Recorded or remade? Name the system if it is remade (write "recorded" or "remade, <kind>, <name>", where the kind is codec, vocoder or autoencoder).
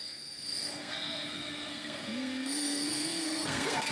remade, codec, SNAC